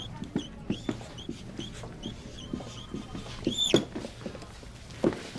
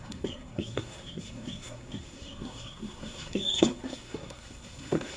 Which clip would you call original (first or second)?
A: first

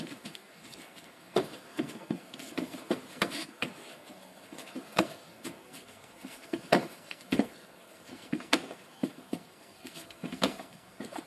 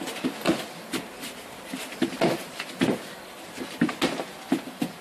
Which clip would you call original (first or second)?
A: second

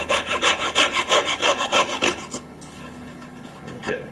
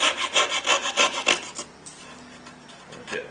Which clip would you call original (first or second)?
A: second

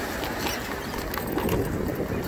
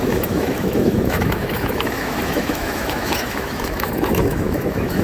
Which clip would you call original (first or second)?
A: first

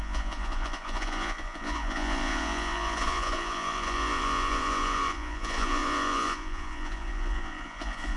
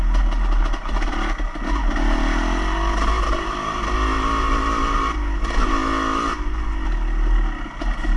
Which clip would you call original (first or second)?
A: second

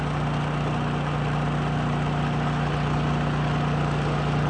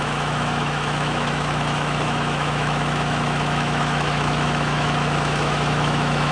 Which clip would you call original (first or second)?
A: first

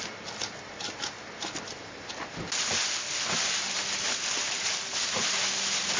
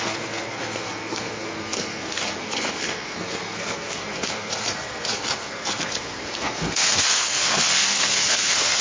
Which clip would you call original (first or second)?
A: first